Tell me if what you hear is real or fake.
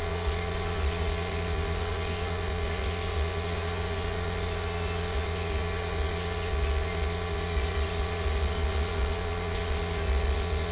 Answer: fake